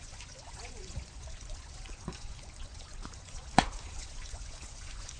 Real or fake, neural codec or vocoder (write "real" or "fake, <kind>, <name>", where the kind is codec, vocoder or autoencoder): fake, vocoder, Vocos